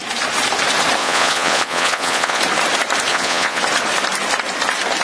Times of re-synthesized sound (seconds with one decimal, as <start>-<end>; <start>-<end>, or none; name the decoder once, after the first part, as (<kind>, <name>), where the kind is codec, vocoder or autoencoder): 1.0-2.4 (vocoder, Vocos); 3.1-3.6